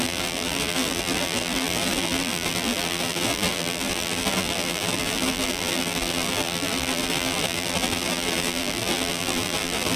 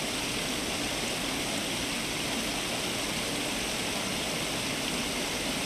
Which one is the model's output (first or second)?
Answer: first